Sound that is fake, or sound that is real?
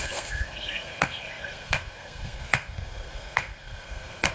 fake